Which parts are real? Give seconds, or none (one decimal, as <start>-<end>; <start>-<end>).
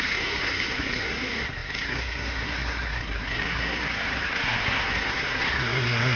none